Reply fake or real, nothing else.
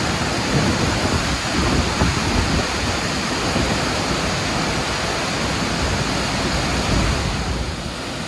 real